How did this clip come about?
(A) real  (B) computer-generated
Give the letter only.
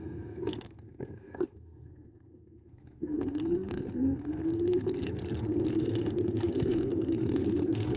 B